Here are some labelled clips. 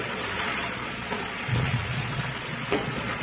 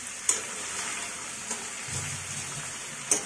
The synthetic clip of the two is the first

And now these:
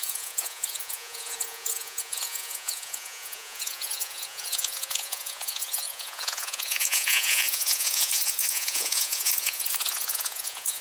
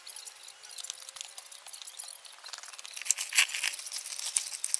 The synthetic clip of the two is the first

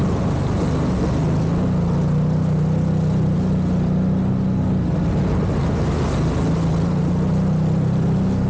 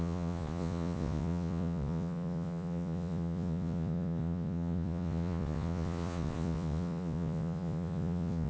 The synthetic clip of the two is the second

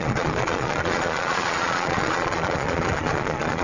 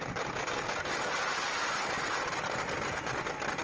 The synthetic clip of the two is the first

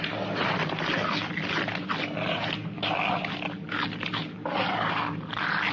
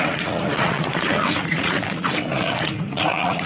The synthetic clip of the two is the second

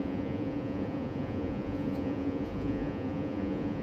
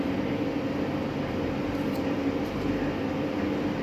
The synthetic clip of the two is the first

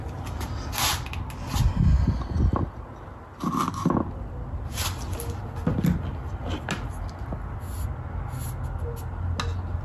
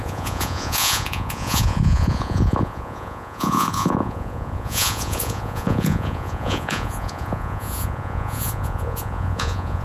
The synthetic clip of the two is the second